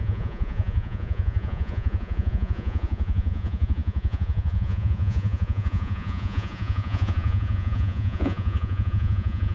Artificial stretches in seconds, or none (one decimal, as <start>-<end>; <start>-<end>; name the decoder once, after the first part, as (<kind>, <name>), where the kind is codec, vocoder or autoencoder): 0.0-9.5 (vocoder, Vocos)